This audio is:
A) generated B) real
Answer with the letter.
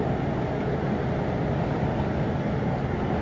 B